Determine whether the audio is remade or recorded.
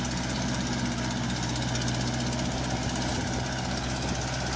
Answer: recorded